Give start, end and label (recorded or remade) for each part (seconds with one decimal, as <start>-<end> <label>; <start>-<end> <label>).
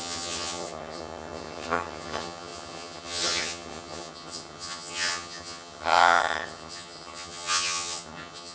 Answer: 0.0-8.5 remade